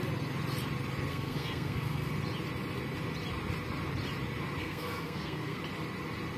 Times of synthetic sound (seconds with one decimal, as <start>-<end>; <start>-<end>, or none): 1.1-2.1; 4.6-5.6